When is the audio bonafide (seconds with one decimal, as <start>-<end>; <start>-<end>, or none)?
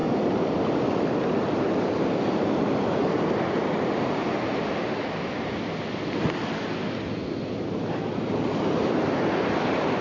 0.0-10.0